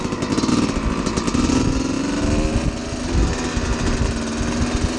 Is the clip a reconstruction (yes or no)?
no